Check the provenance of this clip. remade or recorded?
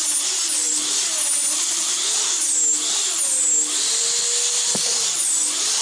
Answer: recorded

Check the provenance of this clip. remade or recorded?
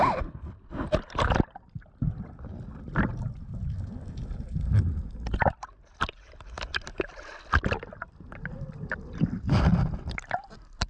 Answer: recorded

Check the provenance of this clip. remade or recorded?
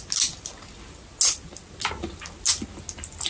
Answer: recorded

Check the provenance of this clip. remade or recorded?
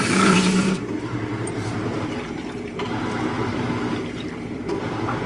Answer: remade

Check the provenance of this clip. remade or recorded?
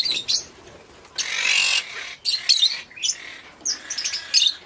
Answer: recorded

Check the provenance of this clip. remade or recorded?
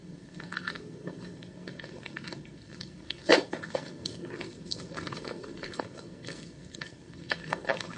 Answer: remade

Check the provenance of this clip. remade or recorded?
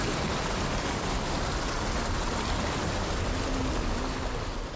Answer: recorded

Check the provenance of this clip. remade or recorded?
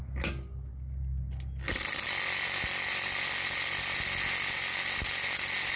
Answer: recorded